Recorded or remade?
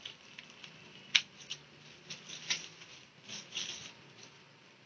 recorded